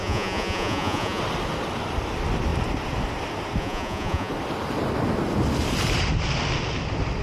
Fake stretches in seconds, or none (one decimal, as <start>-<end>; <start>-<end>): 0.0-1.2; 3.6-4.3